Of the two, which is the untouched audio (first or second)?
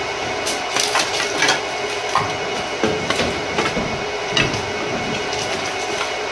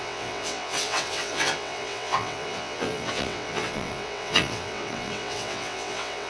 first